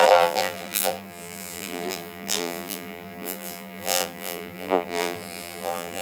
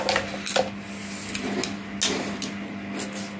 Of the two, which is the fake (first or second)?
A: first